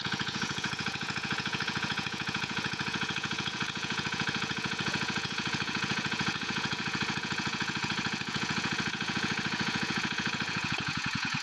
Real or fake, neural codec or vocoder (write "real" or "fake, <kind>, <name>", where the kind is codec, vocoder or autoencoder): fake, vocoder, Vocos